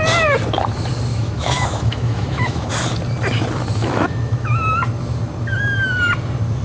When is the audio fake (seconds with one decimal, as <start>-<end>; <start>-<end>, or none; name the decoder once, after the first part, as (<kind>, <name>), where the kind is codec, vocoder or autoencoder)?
1.1-2.7 (autoencoder, DAC-VAE); 3.8-4.5